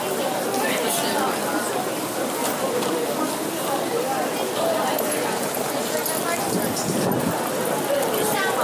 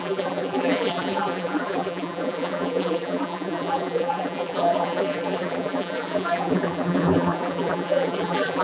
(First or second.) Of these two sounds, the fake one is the second